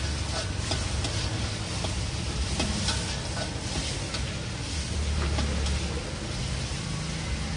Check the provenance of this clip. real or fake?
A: real